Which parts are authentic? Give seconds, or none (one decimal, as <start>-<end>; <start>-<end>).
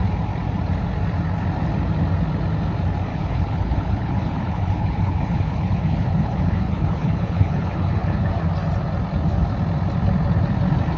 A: 0.0-3.1; 8.3-11.0